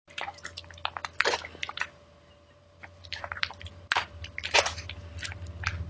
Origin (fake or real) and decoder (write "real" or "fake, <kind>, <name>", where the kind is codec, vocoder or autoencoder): real